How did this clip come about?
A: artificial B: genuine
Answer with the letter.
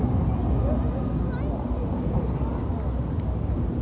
B